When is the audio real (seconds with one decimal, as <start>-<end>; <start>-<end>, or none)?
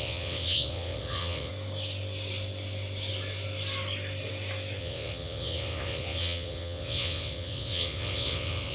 1.5-4.8